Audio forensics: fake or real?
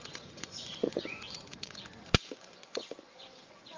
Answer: fake